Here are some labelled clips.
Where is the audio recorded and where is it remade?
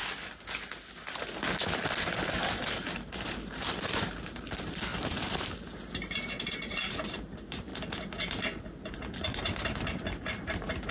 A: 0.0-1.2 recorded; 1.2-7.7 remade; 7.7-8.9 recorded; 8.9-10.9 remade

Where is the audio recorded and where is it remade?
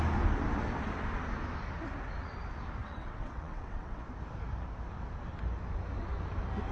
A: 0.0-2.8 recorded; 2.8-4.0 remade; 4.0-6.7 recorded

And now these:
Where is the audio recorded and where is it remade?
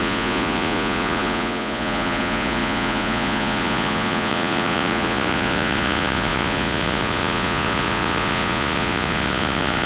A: 0.0-9.9 remade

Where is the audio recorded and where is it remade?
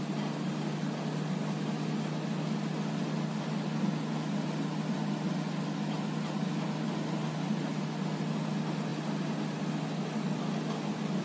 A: 0.0-11.2 recorded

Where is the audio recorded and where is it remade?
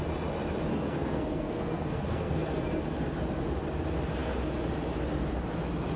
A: 0.0-0.7 recorded; 0.7-2.4 remade; 2.4-6.0 recorded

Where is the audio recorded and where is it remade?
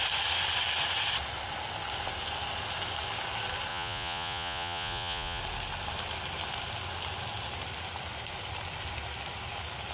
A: 0.0-3.7 recorded; 3.7-5.4 remade; 5.4-9.9 recorded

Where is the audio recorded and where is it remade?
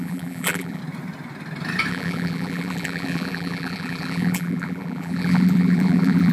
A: 0.0-0.8 remade; 0.8-1.9 recorded; 1.9-6.3 remade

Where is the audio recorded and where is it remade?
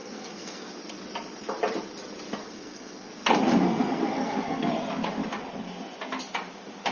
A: 0.0-0.7 remade; 0.7-2.4 recorded; 2.4-3.1 remade; 3.1-3.5 recorded; 3.5-4.7 remade; 4.7-6.9 recorded